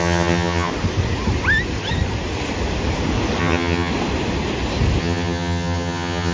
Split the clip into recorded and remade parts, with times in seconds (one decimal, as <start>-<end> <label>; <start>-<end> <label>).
0.0-0.7 remade; 0.7-3.4 recorded; 3.4-3.9 remade; 3.9-5.0 recorded; 5.0-6.3 remade